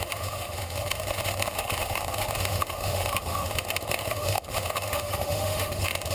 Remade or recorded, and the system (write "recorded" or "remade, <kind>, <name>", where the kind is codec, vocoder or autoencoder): remade, autoencoder, DAC-VAE